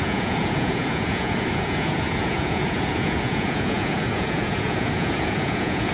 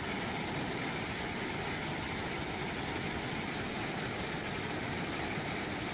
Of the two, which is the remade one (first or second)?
first